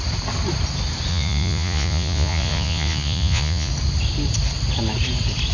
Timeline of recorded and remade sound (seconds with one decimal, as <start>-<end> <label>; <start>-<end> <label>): 0.0-1.1 recorded; 1.1-3.7 remade; 3.7-5.5 recorded